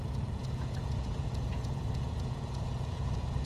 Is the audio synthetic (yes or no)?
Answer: yes